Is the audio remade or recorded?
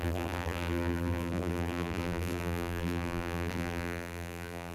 remade